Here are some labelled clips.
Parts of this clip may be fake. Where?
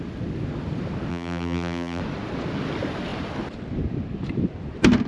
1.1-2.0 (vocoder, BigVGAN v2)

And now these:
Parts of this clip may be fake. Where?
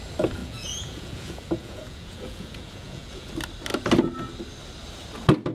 0.4-3.3 (vocoder, Vocos)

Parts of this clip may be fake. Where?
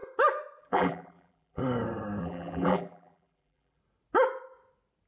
0.6-1.6 (vocoder, BigVGAN v2); 2.2-3.8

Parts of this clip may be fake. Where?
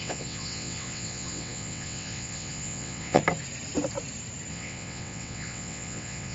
0.0-3.2 (vocoder, WaveNeXt); 4.5-6.3